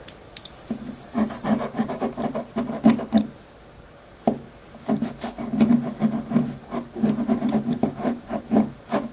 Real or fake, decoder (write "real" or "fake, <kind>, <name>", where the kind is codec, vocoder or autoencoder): real